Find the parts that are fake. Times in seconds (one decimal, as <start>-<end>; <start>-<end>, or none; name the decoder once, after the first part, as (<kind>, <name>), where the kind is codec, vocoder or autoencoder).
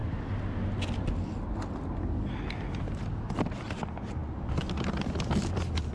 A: none